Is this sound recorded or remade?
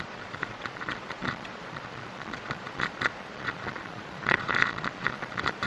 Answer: remade